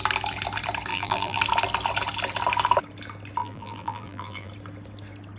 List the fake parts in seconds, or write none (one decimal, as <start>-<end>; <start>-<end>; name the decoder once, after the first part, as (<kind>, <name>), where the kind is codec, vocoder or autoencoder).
0.9-1.4 (vocoder, BigVGAN v2); 3.4-4.5